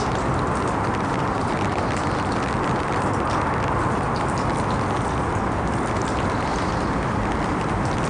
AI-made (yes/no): no